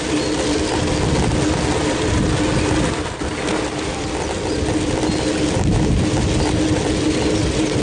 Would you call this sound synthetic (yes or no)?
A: no